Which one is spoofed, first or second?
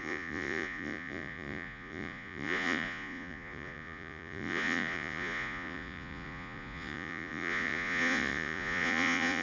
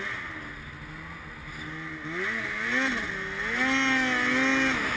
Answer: first